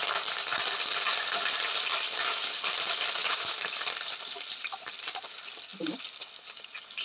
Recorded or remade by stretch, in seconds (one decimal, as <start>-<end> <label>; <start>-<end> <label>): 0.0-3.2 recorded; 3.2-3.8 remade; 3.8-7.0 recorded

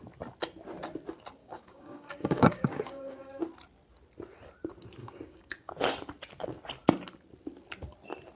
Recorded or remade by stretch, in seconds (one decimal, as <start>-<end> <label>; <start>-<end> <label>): 0.0-1.4 recorded; 1.4-3.4 remade; 3.4-5.0 recorded; 5.0-5.7 remade; 5.7-8.4 recorded

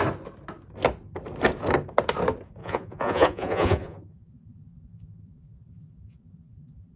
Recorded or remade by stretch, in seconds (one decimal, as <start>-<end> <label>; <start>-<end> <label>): 0.0-2.6 recorded; 2.6-7.0 remade